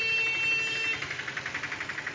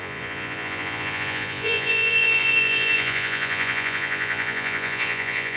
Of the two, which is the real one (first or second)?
first